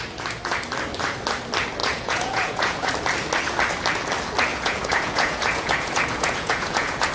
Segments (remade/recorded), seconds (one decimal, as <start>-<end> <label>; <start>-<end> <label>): 0.0-1.8 recorded; 1.8-2.9 remade; 2.9-4.5 recorded; 4.5-7.1 remade